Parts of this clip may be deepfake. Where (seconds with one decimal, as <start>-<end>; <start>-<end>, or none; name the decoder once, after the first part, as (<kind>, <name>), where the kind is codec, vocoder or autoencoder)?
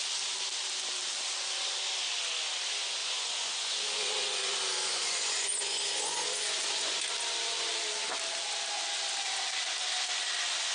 3.0-7.0 (vocoder, Vocos)